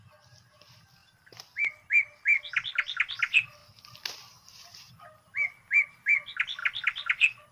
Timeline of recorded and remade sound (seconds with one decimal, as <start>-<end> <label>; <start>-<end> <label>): 0.0-7.5 recorded